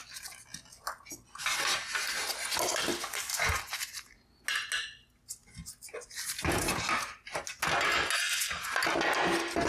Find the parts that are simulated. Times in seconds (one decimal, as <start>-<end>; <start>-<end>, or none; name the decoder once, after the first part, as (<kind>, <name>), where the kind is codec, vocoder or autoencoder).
none